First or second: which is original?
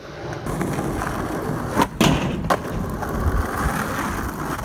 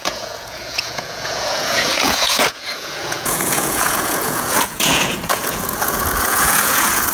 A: first